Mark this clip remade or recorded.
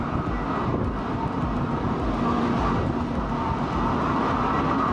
recorded